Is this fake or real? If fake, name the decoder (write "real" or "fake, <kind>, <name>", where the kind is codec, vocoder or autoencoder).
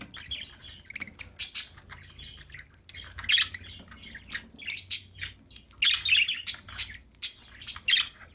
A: real